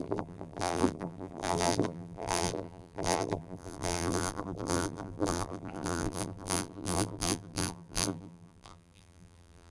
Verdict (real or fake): fake